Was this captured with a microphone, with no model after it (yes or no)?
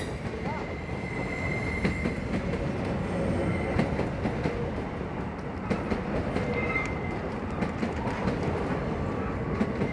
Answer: yes